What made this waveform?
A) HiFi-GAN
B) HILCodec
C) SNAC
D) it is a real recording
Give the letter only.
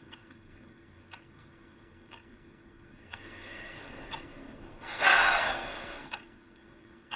C